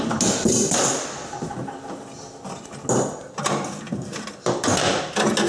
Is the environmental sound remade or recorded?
recorded